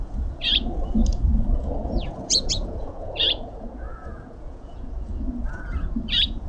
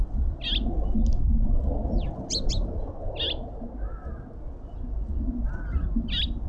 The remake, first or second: first